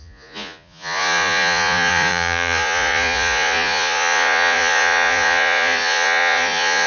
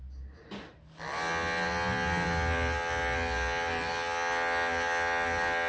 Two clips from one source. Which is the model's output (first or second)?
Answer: first